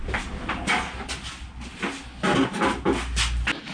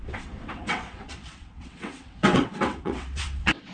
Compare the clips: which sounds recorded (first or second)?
first